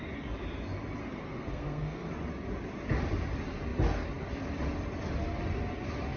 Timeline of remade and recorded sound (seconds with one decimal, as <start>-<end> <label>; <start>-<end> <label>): 0.0-1.0 recorded; 1.0-2.1 remade; 2.1-6.2 recorded